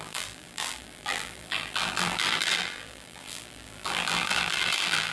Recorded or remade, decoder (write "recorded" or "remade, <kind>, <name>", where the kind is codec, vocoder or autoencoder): remade, vocoder, BigVGAN v2